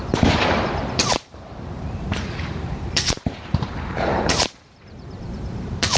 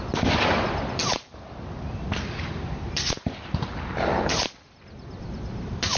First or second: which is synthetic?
first